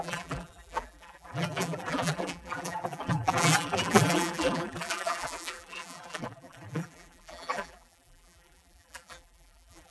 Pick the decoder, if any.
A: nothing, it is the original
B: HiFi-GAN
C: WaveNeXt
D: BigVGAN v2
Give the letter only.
D